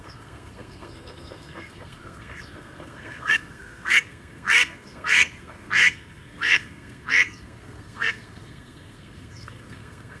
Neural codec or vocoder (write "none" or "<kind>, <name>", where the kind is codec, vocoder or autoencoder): codec, SNAC